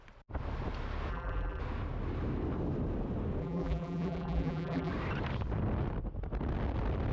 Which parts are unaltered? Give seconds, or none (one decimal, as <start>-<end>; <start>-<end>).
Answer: 0.0-1.1; 1.6-3.4; 4.9-7.1